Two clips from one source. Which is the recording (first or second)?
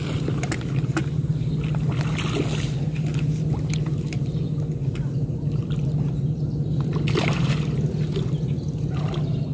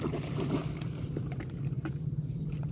first